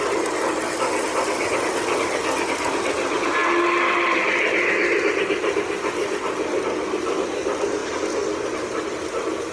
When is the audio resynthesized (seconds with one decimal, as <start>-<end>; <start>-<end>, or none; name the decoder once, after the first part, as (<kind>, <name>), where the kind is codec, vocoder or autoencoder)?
none